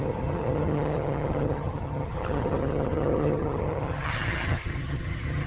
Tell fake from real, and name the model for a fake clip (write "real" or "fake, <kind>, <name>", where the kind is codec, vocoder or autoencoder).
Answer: fake, vocoder, HiFi-GAN